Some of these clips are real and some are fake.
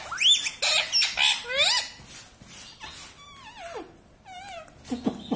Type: real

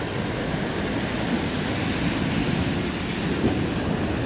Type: real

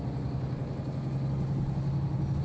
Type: real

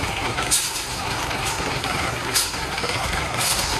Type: fake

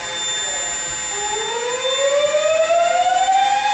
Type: real